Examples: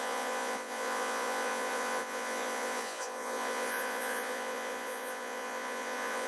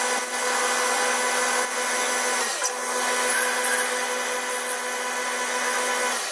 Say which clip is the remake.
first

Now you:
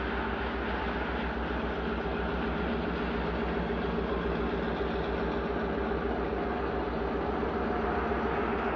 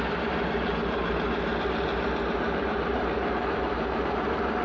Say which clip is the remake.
second